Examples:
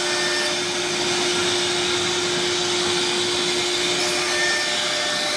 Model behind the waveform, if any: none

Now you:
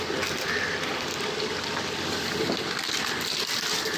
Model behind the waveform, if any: vocoder, BigVGAN v2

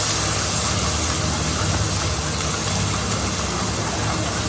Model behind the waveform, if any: none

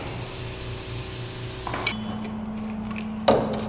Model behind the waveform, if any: none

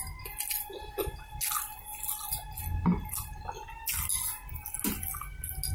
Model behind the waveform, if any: none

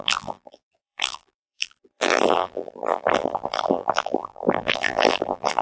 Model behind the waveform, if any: vocoder, BigVGAN v2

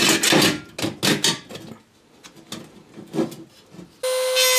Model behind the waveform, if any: none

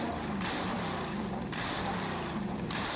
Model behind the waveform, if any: vocoder, BigVGAN v2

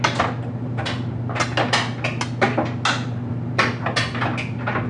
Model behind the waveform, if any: none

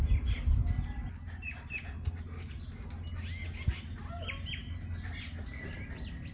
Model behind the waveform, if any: none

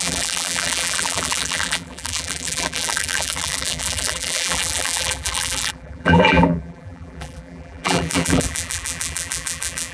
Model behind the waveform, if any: vocoder, BigVGAN v2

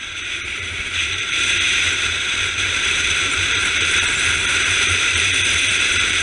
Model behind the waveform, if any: vocoder, BigVGAN v2